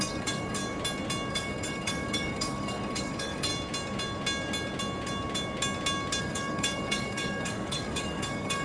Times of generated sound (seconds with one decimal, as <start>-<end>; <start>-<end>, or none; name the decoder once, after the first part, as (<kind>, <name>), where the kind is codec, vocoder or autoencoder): 0.0-0.6 (codec, DAC); 1.3-3.5; 6.2-8.6